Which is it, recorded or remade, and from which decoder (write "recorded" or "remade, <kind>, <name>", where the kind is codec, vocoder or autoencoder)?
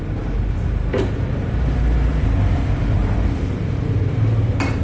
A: remade, vocoder, BigVGAN v2